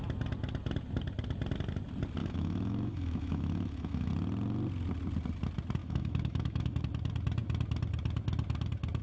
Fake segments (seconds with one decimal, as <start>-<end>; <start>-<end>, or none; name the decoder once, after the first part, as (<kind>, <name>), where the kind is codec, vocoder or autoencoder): 2.2-4.1 (autoencoder, DAC-VAE); 5.8-6.8